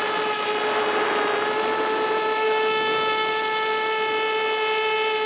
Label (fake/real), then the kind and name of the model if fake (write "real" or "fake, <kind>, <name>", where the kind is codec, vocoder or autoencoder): real